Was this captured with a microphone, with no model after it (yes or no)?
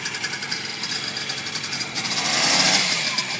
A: no